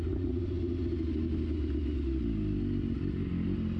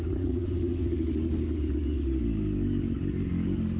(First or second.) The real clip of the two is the first